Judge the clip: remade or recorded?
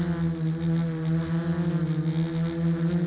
recorded